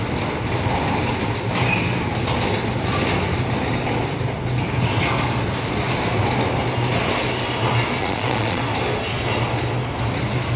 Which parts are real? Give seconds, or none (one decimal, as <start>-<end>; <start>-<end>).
0.0-8.0; 8.6-10.6

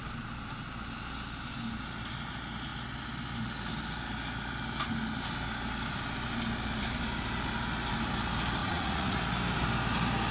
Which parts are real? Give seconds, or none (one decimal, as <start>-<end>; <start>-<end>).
0.0-8.6; 9.2-10.3

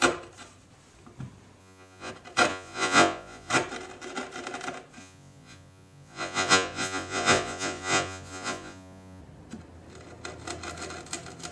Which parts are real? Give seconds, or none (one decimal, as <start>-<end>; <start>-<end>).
0.0-1.6; 2.1-2.5; 3.5-5.0; 9.2-11.5

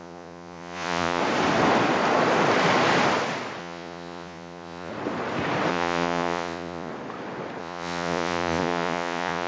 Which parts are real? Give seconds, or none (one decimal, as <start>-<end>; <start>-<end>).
1.2-3.6; 4.9-5.7; 6.9-7.6

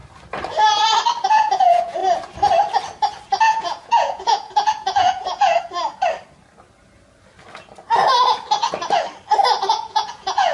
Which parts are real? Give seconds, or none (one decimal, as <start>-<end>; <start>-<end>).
0.0-1.3; 2.0-3.4; 5.5-9.7

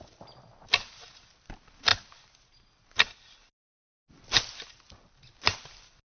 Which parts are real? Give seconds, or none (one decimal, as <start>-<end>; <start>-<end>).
0.0-6.1

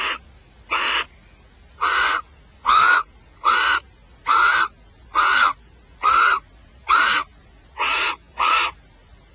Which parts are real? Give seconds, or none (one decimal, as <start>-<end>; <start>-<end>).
none